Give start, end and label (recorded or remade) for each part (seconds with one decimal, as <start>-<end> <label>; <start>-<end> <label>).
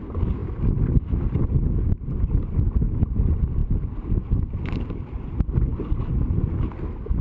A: 0.0-7.2 recorded